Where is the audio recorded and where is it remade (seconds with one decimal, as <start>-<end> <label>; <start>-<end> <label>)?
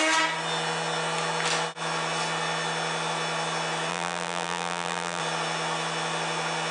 0.0-3.9 recorded; 3.9-5.2 remade; 5.2-6.7 recorded